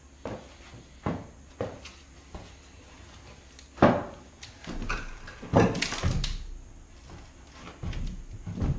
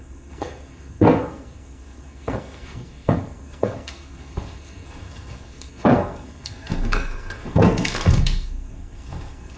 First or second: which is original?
first